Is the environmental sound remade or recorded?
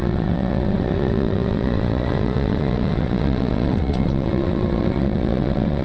remade